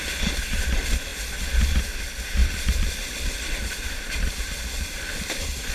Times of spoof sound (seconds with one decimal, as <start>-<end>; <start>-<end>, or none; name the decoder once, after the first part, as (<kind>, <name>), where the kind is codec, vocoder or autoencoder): 2.4-5.0 (vocoder, BigVGAN v2)